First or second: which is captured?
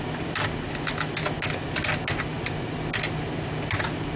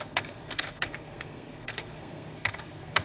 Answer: first